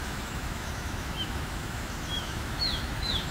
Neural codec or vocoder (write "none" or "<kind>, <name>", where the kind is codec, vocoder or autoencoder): autoencoder, DAC-VAE